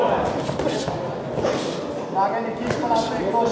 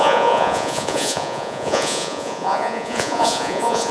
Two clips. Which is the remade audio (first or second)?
second